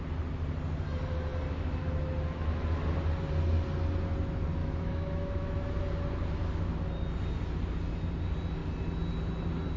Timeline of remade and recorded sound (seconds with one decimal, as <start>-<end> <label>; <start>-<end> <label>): 0.0-4.6 recorded; 4.6-5.8 remade; 5.8-9.8 recorded